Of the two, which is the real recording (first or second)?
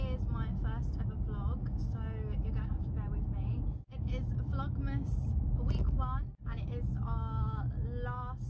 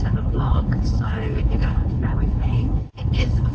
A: first